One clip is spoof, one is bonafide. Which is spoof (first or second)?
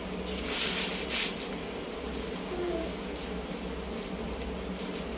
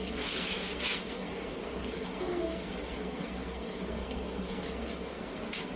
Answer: second